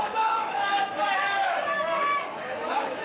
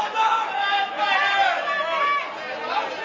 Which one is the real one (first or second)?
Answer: second